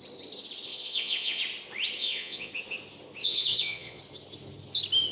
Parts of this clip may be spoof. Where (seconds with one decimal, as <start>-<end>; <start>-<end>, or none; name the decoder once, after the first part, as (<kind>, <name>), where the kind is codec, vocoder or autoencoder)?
0.7-1.4 (vocoder, Vocos); 2.0-2.5; 3.2-4.0